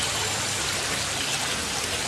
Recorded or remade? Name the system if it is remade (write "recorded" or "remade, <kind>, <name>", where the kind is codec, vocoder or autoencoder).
recorded